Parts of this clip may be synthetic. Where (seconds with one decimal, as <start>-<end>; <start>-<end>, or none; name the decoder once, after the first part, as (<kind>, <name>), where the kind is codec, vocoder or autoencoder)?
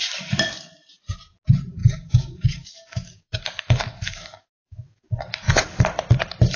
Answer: 1.8-5.8 (codec, DAC)